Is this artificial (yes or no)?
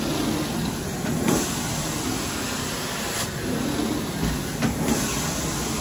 no